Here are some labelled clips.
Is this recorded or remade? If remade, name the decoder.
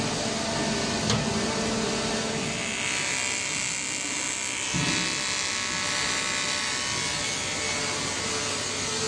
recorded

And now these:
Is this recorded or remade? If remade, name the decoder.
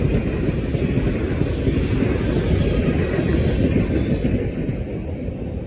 recorded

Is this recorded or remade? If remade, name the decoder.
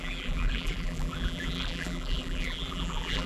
remade, vocoder, BigVGAN v2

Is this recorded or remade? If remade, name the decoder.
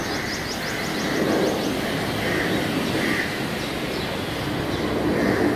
recorded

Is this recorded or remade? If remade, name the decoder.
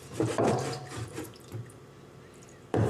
remade, vocoder, BigVGAN v2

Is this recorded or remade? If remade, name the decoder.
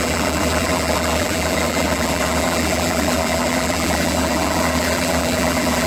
remade, vocoder, BigVGAN v2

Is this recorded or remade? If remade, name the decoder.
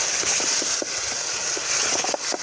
recorded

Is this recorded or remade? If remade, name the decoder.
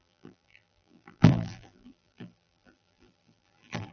remade, vocoder, BigVGAN v2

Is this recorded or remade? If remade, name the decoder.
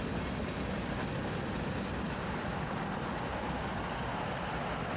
recorded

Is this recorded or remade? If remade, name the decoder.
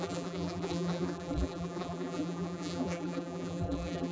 remade, vocoder, BigVGAN v2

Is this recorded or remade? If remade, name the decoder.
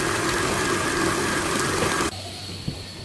recorded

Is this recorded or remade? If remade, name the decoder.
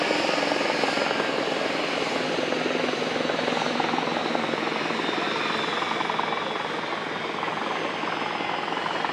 recorded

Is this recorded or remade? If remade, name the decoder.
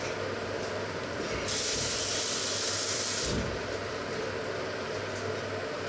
remade, vocoder, BigVGAN v2